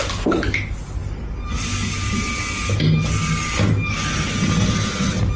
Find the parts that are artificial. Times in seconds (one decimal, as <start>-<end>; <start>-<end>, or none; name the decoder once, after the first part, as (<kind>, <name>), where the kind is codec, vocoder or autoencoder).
none